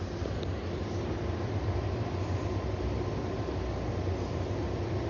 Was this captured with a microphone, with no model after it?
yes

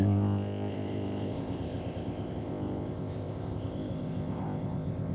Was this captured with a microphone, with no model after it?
no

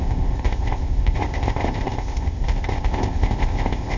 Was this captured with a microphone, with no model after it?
no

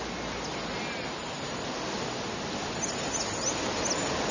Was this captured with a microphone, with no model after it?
yes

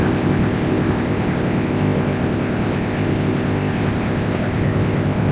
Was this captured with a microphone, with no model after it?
no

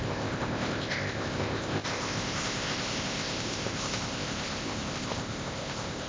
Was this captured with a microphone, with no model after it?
no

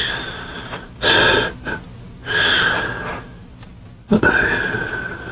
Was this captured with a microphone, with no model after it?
yes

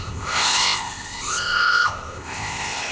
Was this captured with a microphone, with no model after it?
no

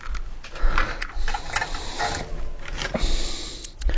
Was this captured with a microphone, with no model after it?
yes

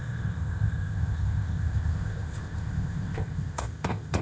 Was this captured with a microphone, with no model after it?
no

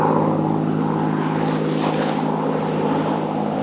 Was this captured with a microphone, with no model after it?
yes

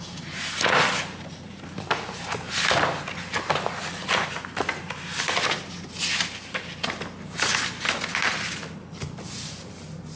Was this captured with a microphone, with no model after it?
yes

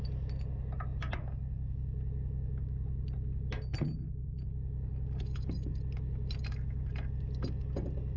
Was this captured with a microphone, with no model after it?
yes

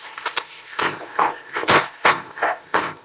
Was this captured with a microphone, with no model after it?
no